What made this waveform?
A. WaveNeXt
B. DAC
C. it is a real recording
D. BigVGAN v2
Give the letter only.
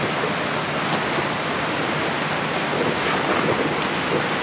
C